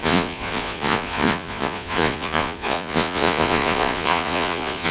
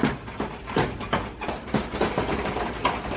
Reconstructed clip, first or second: first